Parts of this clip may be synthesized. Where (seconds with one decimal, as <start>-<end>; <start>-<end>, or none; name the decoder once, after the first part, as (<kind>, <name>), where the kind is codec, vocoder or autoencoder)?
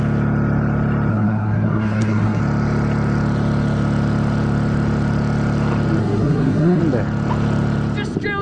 1.1-2.4 (codec, SNAC); 6.0-6.8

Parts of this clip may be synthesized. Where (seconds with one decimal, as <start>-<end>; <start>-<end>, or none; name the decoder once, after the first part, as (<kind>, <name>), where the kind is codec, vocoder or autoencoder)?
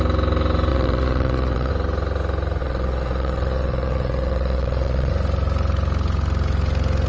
0.7-1.7 (vocoder, Vocos); 2.6-5.1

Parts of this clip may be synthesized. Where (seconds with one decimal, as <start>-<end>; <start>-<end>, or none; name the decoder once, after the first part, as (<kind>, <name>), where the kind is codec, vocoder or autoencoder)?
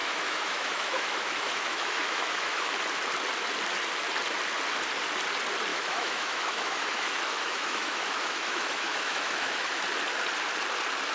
0.0-2.7 (autoencoder, DAC-VAE); 5.7-9.8